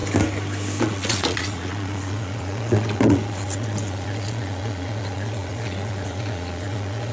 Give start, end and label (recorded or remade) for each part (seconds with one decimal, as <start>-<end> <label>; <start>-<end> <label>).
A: 0.0-0.8 recorded; 0.8-7.1 remade